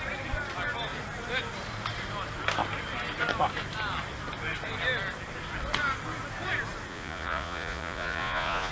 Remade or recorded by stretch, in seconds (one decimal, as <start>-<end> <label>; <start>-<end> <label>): 0.0-6.9 recorded; 6.9-8.7 remade